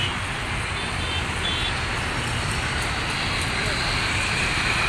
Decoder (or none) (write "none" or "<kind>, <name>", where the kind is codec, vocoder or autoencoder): none